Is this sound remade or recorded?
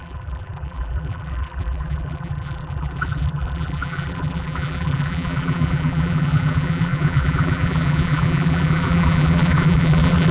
remade